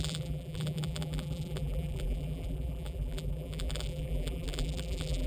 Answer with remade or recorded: remade